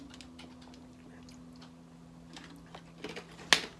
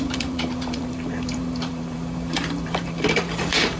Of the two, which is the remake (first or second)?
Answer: second